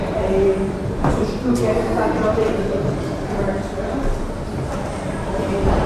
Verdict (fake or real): fake